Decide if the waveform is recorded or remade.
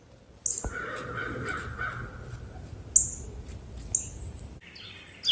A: recorded